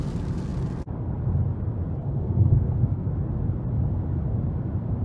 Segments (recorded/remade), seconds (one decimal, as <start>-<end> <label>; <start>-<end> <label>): 0.0-2.0 recorded; 2.0-3.1 remade; 3.1-5.0 recorded